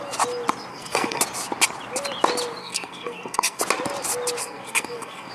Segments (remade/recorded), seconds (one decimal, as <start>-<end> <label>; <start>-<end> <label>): 0.0-0.7 recorded; 0.7-1.2 remade; 1.2-2.6 recorded; 2.6-3.6 remade; 3.6-4.4 recorded; 4.4-5.3 remade

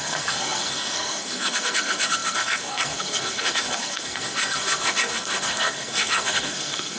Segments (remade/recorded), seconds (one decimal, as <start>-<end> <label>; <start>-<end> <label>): 0.0-7.0 remade

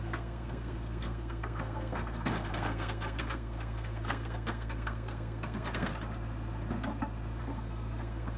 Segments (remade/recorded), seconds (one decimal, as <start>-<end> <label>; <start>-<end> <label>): 0.0-5.9 remade; 5.9-7.4 recorded; 7.4-8.4 remade